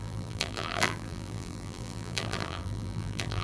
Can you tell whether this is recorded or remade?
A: remade